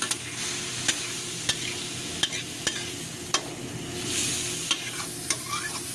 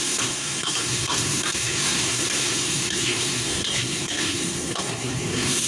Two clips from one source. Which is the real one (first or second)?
first